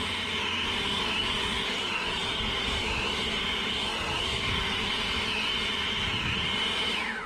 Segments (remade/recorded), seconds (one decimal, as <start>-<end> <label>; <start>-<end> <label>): 0.0-7.3 recorded